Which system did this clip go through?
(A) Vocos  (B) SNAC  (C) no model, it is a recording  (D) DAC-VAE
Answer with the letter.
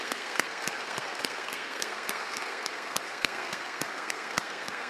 B